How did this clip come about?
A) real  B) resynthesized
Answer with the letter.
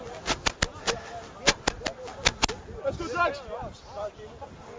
A